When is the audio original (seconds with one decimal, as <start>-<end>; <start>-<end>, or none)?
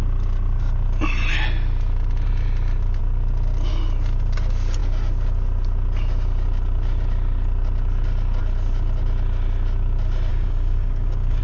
0.0-10.3